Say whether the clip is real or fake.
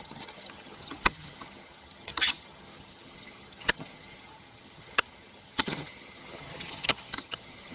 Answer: fake